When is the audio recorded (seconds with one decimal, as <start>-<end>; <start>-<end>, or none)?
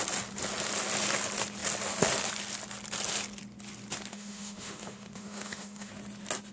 0.0-4.1; 5.9-6.5